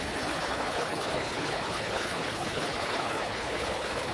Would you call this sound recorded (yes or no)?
no